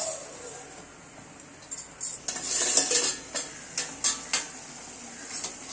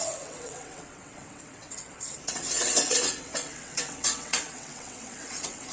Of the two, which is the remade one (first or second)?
second